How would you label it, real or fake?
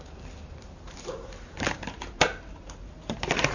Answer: fake